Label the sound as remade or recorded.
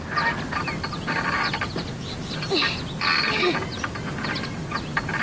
recorded